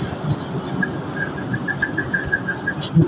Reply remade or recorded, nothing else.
recorded